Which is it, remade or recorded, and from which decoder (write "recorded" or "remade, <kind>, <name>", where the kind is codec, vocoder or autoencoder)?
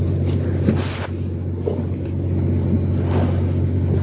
recorded